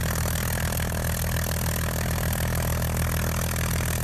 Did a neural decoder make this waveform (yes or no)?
no